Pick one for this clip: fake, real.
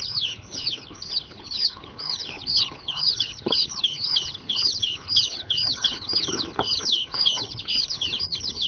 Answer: fake